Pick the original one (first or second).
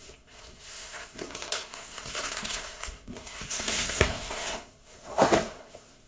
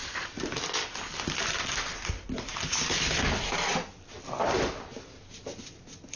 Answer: second